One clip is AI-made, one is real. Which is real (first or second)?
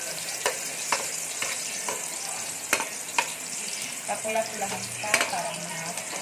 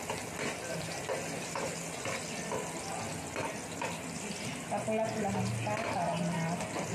second